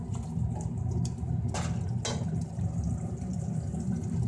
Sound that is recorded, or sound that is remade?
recorded